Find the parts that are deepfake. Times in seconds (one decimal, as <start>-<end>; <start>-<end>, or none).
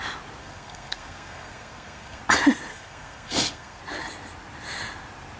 0.4-2.2; 2.7-3.8